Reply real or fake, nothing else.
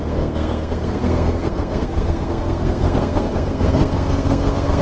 fake